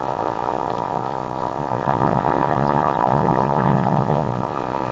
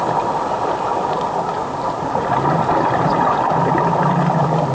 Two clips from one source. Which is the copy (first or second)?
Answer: first